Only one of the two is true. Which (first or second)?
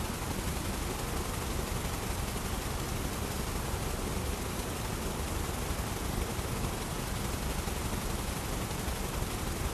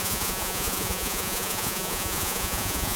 first